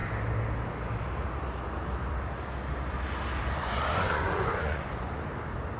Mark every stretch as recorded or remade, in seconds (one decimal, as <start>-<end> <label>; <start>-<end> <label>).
0.0-3.6 recorded; 3.6-5.2 remade; 5.2-5.8 recorded